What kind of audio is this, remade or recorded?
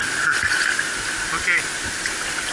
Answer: recorded